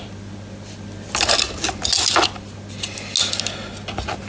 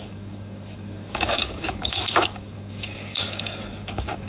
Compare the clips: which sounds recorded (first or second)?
first